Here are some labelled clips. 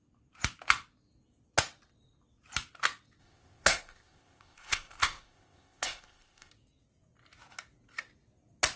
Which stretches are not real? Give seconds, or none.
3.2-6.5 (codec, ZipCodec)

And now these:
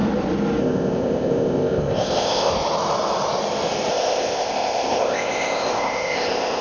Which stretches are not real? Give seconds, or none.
0.6-2.5 (codec, ZipCodec); 3.9-6.6

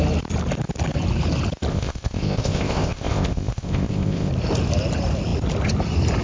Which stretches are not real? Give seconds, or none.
1.7-4.3 (codec, ZipCodec)

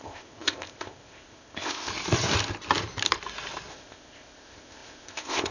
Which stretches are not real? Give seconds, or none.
0.0-1.9 (codec, ZipCodec); 3.7-5.5